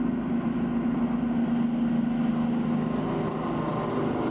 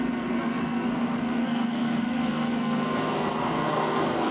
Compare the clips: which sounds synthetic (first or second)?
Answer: second